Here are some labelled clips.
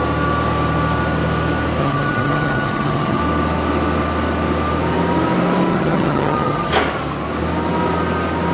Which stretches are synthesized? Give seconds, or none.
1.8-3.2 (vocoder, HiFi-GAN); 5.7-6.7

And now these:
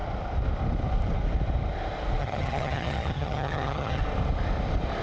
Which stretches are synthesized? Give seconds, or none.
2.2-4.0 (vocoder, HiFi-GAN)

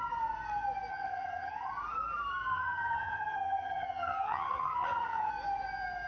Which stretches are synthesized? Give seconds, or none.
0.9-1.7 (vocoder, HiFi-GAN); 2.5-5.3

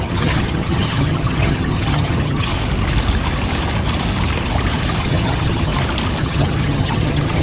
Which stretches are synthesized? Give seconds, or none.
0.0-2.5 (vocoder, HiFi-GAN); 5.0-5.7; 6.2-7.4

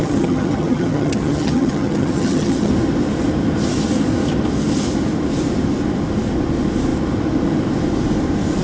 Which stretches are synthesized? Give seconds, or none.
0.0-2.7 (vocoder, HiFi-GAN)

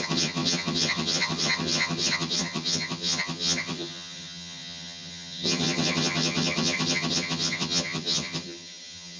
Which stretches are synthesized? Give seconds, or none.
0.0-9.2 (vocoder, HiFi-GAN)

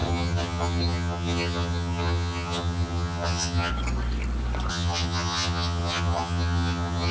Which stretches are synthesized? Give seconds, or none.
0.0-3.7 (vocoder, HiFi-GAN); 4.7-7.1